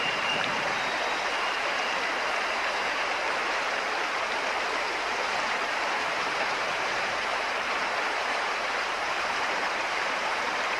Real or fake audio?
fake